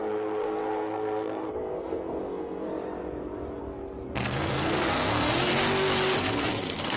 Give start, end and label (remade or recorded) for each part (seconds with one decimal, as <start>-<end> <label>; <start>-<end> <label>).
0.0-2.7 remade; 2.7-3.6 recorded; 3.6-5.5 remade; 5.5-6.2 recorded; 6.2-7.0 remade